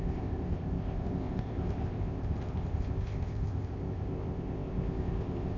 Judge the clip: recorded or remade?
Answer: remade